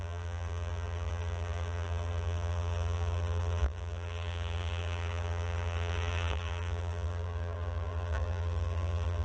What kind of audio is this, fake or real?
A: fake